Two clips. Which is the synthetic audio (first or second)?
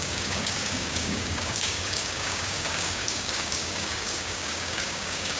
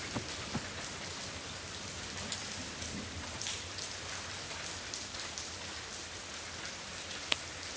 first